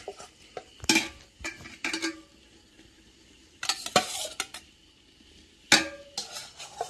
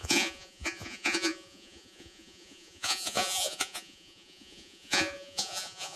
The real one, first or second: first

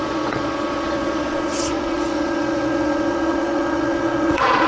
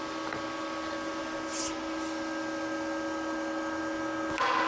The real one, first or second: second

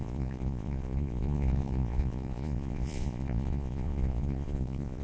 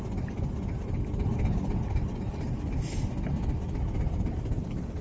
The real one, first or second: second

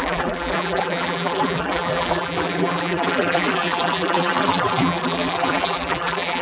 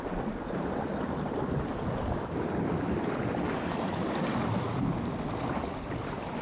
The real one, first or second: second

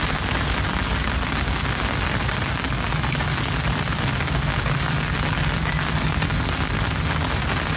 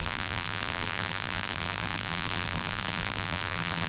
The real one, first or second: first